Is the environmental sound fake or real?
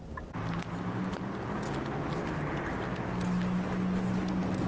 real